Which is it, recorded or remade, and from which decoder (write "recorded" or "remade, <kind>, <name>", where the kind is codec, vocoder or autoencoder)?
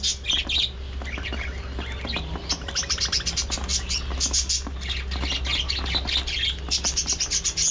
recorded